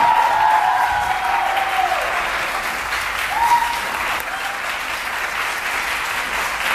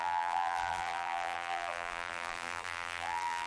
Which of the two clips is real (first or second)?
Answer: first